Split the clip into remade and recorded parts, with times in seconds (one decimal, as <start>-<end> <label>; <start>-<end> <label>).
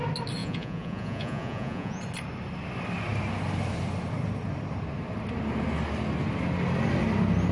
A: 0.0-0.4 recorded; 0.4-2.0 remade; 2.0-7.5 recorded